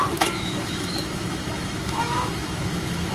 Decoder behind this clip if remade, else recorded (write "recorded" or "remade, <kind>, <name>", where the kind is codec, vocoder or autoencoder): remade, autoencoder, DAC-VAE